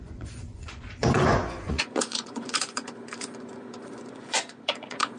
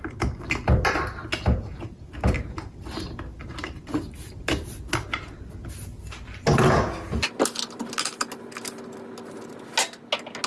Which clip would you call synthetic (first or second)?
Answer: first